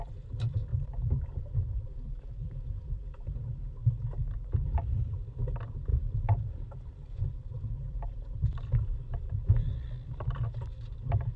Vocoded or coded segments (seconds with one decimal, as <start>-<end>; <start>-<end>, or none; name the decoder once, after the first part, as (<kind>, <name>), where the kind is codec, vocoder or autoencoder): 0.0-0.7 (vocoder, BigVGAN v2); 1.4-3.8; 4.8-11.4

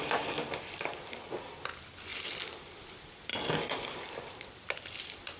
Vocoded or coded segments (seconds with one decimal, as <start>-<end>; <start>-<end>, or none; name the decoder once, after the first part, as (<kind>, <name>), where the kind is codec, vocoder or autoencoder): 0.0-5.4 (vocoder, BigVGAN v2)

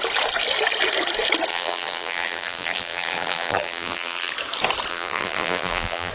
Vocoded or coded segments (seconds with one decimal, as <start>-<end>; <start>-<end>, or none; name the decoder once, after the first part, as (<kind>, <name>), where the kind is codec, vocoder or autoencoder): 1.5-4.3 (vocoder, BigVGAN v2); 4.9-6.1

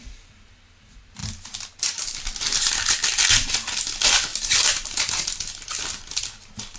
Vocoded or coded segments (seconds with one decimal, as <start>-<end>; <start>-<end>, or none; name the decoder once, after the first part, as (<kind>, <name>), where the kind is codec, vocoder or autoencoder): 4.3-5.1 (vocoder, BigVGAN v2)

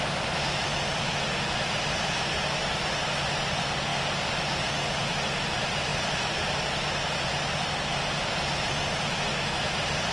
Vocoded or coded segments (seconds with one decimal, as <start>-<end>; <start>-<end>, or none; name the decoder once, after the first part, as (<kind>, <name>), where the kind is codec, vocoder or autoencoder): 5.9-6.7 (vocoder, BigVGAN v2)

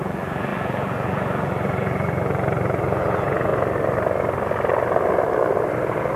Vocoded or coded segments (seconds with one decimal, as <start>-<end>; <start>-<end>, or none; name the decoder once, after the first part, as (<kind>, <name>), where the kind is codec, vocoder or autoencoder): 0.0-3.5 (vocoder, BigVGAN v2)